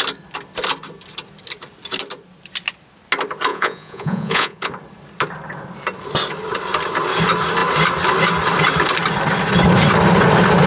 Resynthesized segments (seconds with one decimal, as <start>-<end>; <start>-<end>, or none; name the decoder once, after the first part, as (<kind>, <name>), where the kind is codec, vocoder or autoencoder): 3.5-4.7 (vocoder, Vocos)